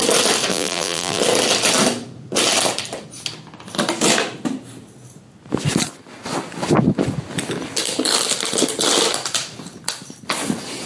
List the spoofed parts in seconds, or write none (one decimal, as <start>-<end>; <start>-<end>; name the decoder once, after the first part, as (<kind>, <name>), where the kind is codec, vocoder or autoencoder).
0.5-1.2 (vocoder, BigVGAN v2)